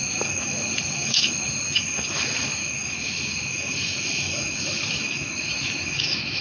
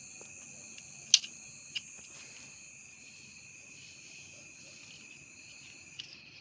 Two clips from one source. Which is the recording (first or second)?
second